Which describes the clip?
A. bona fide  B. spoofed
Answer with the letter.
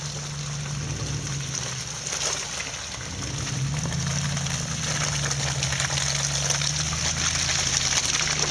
A